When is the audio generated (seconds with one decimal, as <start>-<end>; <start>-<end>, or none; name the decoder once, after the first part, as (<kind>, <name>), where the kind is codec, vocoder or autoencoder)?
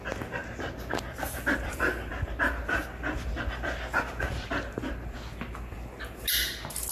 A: none